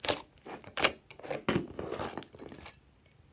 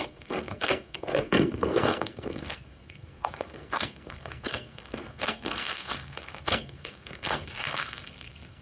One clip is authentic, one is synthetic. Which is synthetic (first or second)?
second